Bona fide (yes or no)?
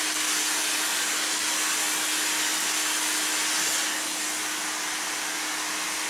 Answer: yes